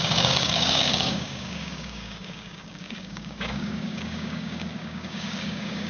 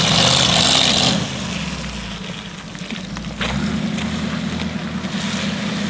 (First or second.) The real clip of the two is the second